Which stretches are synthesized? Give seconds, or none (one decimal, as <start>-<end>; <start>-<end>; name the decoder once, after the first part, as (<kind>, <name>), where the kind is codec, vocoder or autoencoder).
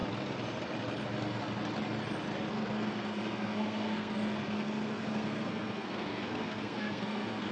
2.5-7.5 (codec, SNAC)